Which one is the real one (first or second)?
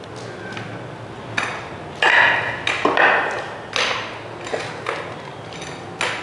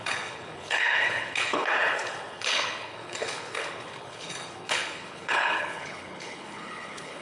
first